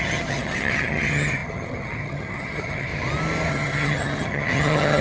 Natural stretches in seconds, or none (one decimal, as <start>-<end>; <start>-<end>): 2.9-3.5